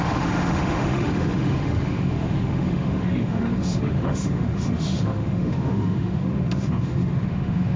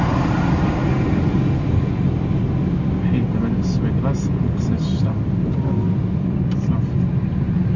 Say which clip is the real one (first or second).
second